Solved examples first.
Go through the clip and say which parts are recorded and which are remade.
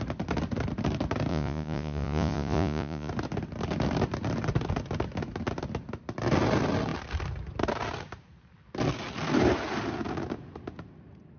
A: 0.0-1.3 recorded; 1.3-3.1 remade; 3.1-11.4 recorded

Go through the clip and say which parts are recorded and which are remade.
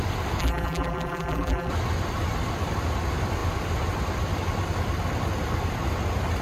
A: 0.0-0.4 recorded; 0.4-1.7 remade; 1.7-6.4 recorded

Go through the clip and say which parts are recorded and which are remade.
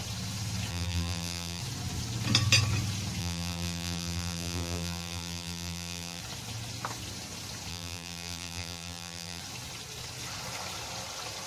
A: 0.0-0.7 recorded; 0.7-1.6 remade; 1.6-3.2 recorded; 3.2-6.2 remade; 6.2-7.7 recorded; 7.7-9.4 remade; 9.4-11.5 recorded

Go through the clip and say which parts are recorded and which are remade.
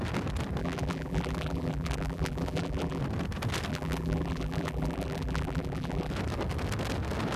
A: 0.0-0.6 recorded; 0.6-3.0 remade; 3.0-3.7 recorded; 3.7-6.1 remade; 6.1-7.4 recorded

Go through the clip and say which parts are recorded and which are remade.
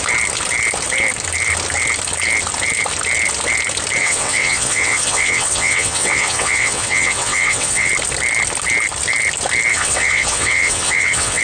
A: 0.0-4.0 recorded; 4.0-7.9 remade; 7.9-9.7 recorded; 9.7-11.4 remade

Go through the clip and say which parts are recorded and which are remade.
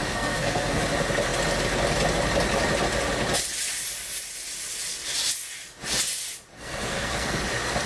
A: 0.0-0.8 remade; 0.8-6.5 recorded; 6.5-7.4 remade; 7.4-7.9 recorded